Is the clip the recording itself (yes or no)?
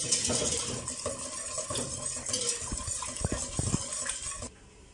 yes